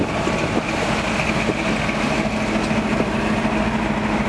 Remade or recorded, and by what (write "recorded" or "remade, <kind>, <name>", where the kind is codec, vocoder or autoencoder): recorded